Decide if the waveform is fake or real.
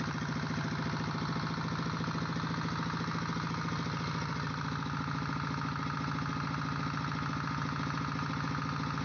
real